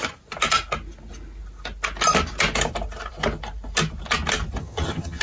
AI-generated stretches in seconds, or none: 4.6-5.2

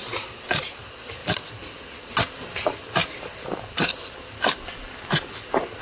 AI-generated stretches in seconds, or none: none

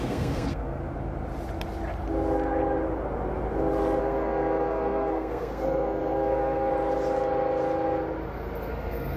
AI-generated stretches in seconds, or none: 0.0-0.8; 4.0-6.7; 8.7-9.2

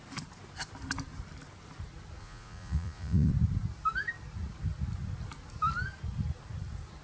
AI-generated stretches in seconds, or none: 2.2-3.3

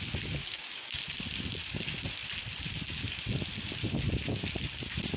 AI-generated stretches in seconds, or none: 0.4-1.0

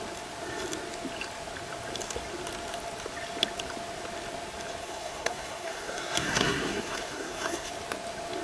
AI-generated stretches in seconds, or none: 4.8-7.7